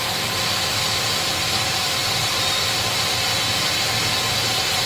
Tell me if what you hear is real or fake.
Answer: real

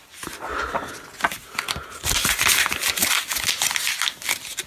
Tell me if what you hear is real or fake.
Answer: real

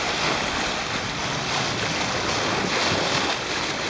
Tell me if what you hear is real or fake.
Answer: real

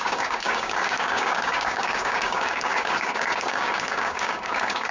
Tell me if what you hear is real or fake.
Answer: fake